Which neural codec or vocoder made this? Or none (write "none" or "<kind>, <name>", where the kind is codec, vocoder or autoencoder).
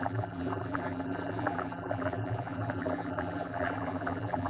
vocoder, BigVGAN v2